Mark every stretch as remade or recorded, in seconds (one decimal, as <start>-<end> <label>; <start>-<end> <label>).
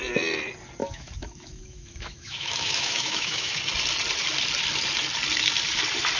0.0-0.8 recorded; 0.8-3.6 remade; 3.6-6.2 recorded